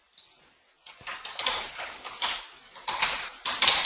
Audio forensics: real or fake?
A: real